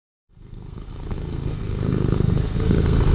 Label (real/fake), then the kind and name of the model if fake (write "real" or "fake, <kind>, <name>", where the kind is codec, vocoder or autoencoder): fake, codec, SNAC